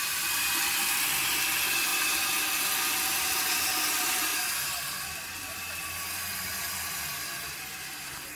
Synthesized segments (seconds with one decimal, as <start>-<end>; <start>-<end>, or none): none